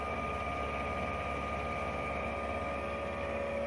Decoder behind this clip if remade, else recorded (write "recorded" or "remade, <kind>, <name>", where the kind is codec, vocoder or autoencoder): recorded